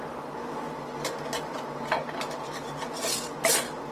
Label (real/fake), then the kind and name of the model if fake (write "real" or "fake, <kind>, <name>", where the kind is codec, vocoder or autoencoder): real